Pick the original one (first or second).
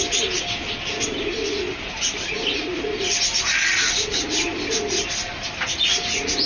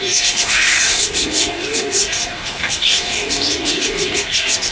first